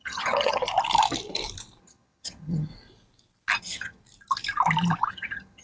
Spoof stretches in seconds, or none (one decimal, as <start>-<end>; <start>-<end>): 0.0-0.6; 1.8-2.7; 3.6-4.0; 5.1-5.6